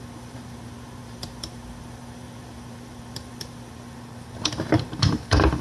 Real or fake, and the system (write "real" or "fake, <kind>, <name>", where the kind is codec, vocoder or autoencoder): fake, vocoder, BigVGAN v2